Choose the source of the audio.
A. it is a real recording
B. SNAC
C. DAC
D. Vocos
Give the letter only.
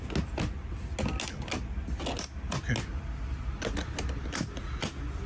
A